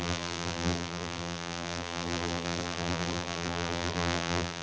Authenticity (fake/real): fake